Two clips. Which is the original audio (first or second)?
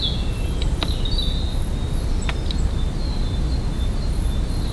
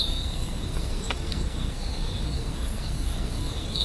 first